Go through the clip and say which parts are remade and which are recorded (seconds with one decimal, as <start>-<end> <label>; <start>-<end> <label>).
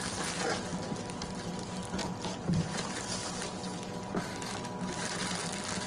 0.0-4.3 recorded; 4.3-5.1 remade; 5.1-5.9 recorded